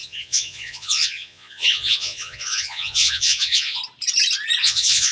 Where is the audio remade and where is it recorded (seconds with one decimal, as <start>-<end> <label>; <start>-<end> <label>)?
0.0-3.8 remade; 3.8-4.6 recorded; 4.6-5.1 remade

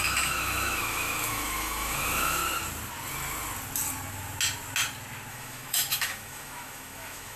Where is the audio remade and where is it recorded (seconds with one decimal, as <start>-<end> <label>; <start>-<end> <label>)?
0.0-2.4 remade; 2.4-5.3 recorded; 5.3-7.4 remade